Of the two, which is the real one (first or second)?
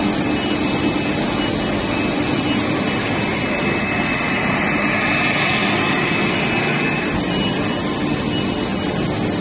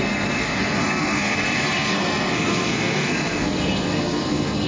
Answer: first